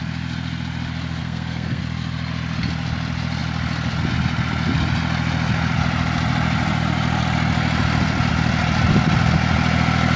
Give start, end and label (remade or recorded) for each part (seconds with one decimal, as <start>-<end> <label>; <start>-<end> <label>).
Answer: 0.0-1.2 recorded; 1.2-1.8 remade; 1.8-10.2 recorded